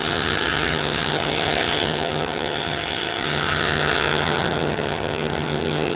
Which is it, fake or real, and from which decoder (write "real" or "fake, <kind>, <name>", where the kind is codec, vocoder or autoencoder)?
fake, vocoder, HiFi-GAN